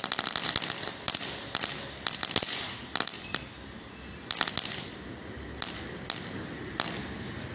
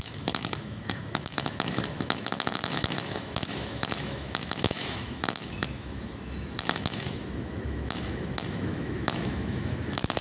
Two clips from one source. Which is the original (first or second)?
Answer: first